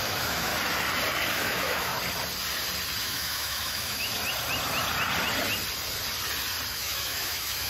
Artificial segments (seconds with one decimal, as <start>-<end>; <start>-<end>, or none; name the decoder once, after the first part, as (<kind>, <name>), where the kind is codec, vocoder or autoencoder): 0.0-0.5 (autoencoder, DAC-VAE); 1.3-1.9; 3.0-4.1; 6.7-7.7